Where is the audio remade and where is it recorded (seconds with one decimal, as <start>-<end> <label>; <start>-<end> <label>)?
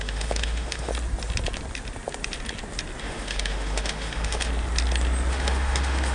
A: 0.0-0.9 remade; 0.9-3.0 recorded; 3.0-4.5 remade; 4.5-5.3 recorded; 5.3-6.1 remade